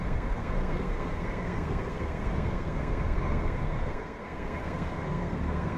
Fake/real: fake